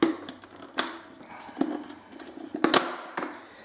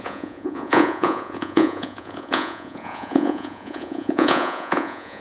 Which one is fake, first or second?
second